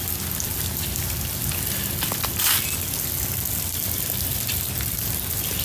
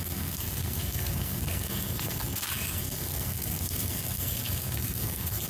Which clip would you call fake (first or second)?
second